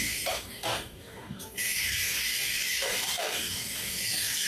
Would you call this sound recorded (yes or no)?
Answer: no